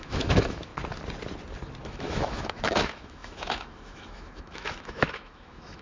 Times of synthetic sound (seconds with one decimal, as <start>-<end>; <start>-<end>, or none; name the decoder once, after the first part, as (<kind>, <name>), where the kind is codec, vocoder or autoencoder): 0.0-0.7 (autoencoder, DAC-VAE); 1.9-5.8